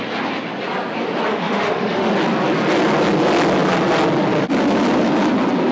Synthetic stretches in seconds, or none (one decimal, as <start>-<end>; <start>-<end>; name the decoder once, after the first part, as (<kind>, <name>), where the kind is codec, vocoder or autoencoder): 1.3-2.1 (autoencoder, DAC-VAE)